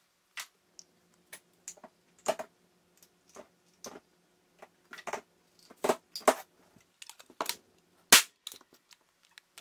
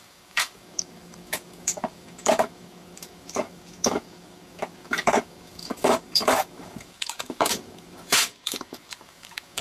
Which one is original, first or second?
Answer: first